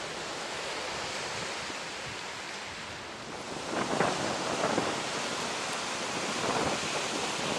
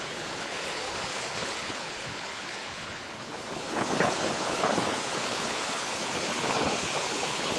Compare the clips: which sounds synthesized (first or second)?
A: second